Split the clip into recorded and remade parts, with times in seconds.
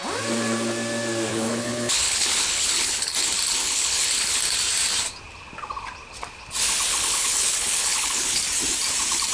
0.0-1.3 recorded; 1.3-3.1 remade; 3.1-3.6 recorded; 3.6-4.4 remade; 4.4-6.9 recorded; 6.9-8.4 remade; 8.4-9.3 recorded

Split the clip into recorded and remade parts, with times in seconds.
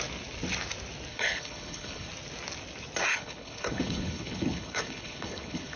0.0-1.1 recorded; 1.1-2.1 remade; 2.1-3.1 recorded; 3.1-5.8 remade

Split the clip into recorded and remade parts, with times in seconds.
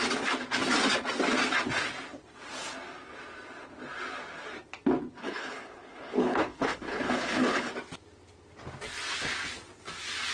0.0-5.2 recorded; 5.2-7.7 remade; 7.7-10.3 recorded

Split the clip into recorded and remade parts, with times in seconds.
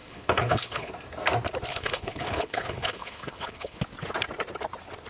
0.0-0.9 remade; 0.9-1.7 recorded; 1.7-3.8 remade; 3.8-5.1 recorded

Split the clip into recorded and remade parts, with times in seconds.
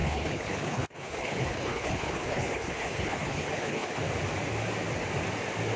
0.0-4.0 remade; 4.0-5.8 recorded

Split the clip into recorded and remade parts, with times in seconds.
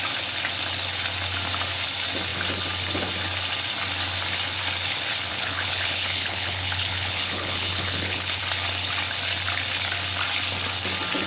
0.0-5.3 recorded; 5.3-8.4 remade; 8.4-11.3 recorded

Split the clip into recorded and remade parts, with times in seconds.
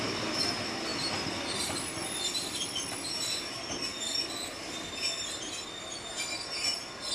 0.0-7.1 recorded